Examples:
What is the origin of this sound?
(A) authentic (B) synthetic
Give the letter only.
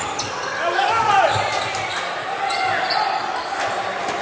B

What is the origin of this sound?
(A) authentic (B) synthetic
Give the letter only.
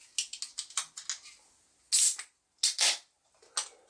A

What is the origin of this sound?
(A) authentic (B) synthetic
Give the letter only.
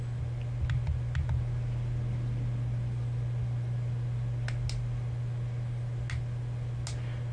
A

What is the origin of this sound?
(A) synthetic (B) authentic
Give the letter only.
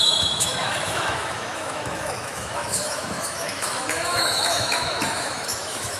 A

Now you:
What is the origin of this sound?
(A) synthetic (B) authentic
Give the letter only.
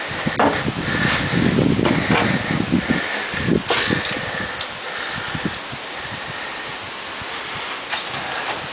B